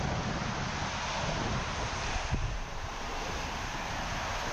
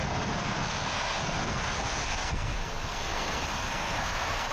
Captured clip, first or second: first